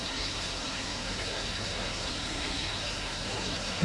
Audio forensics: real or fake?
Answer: fake